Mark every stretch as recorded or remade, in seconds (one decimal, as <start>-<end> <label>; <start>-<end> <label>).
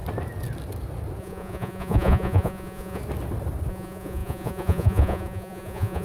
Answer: 0.0-1.2 recorded; 1.2-3.0 remade; 3.0-3.7 recorded; 3.7-6.0 remade